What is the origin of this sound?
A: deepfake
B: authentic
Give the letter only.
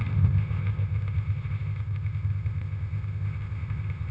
A